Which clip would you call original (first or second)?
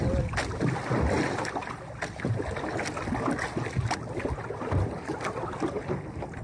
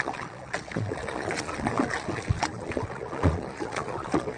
first